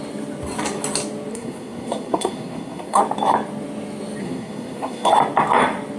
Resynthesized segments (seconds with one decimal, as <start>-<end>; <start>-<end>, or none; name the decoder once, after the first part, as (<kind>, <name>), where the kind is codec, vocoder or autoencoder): 1.3-3.0 (codec, SNAC); 4.2-5.1